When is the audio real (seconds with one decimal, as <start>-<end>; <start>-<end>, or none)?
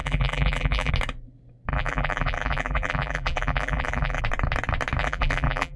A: 0.9-1.7; 4.2-5.0